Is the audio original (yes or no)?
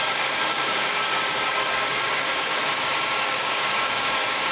no